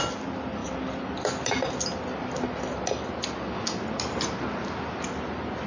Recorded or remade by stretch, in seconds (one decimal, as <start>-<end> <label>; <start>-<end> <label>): 0.0-5.7 recorded